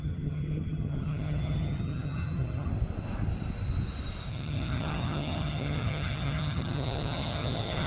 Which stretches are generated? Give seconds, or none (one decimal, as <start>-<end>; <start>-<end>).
0.0-2.7; 4.3-7.9